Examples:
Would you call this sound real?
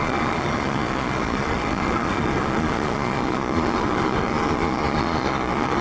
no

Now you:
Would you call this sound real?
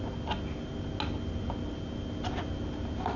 yes